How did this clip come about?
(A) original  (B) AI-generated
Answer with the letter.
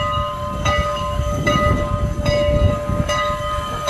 B